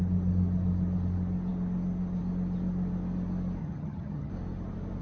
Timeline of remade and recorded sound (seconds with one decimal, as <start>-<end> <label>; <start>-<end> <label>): 0.0-3.6 recorded; 3.6-4.3 remade; 4.3-5.0 recorded